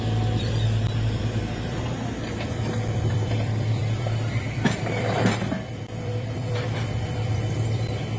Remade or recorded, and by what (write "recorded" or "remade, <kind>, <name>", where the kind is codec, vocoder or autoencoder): remade, vocoder, BigVGAN v2